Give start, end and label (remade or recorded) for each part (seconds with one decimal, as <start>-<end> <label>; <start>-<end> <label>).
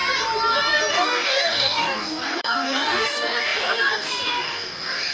0.0-0.9 recorded; 0.9-5.1 remade